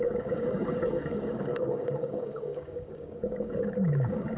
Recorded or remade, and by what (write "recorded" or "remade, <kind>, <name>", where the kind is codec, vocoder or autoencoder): remade, codec, DAC